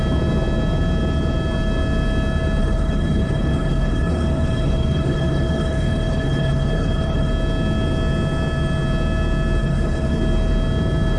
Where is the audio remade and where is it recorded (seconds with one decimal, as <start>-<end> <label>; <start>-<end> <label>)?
0.0-2.6 recorded; 2.6-7.3 remade; 7.3-9.6 recorded; 9.6-10.2 remade; 10.2-11.2 recorded